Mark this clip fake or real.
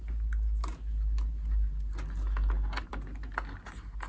real